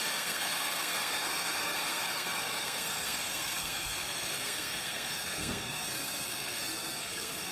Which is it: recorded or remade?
remade